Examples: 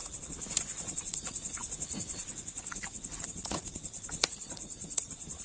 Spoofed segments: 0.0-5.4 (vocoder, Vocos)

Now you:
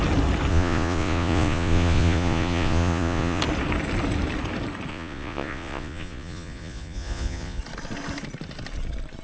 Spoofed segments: 0.5-3.4 (vocoder, Vocos); 4.9-7.6

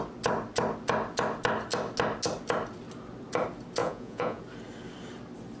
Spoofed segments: 3.8-4.4 (vocoder, Vocos)

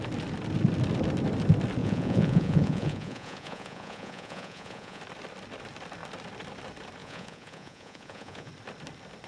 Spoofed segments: 1.8-5.0 (vocoder, Vocos); 7.0-8.5

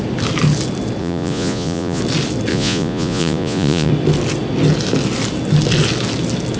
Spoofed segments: 1.0-2.0 (vocoder, Vocos); 2.5-3.9

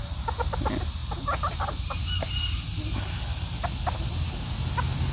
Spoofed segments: none

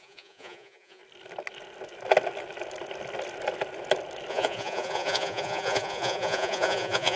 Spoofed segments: 0.0-1.0 (vocoder, Vocos); 4.3-7.2

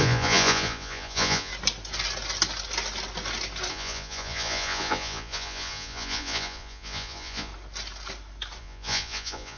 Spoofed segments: 0.0-1.5 (vocoder, Vocos); 3.7-7.5; 8.6-9.6